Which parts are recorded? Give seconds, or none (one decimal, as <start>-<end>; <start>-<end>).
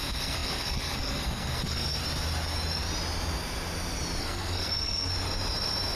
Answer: 2.0-4.2; 5.1-6.0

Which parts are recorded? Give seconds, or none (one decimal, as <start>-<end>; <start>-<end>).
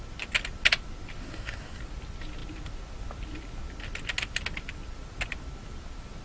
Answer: 0.0-1.2; 1.8-6.2